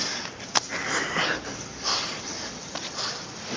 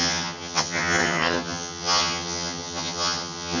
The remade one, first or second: second